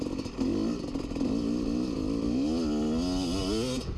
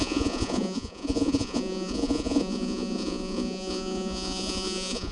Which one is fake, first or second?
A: second